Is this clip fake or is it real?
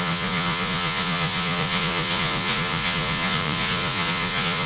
fake